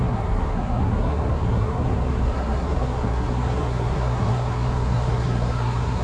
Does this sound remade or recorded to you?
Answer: remade